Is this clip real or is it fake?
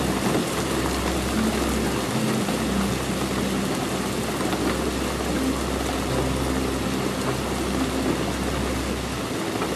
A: real